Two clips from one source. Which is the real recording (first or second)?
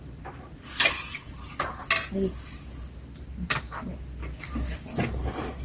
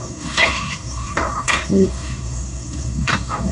first